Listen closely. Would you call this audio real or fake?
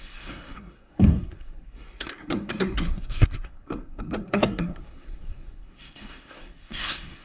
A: fake